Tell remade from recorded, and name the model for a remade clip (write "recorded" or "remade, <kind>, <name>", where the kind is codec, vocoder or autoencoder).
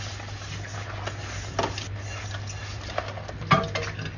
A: recorded